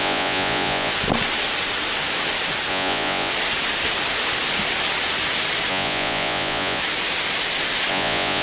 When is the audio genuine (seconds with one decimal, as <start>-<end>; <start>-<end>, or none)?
0.9-2.7; 3.3-5.7; 6.8-7.9